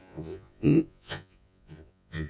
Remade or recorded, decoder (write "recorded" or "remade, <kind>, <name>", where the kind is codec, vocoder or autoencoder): remade, vocoder, Vocos